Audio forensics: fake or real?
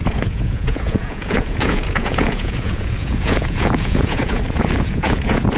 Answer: fake